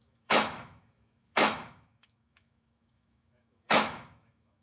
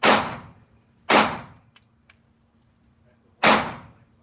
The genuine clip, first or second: second